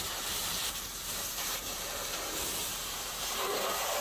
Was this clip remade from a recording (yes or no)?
yes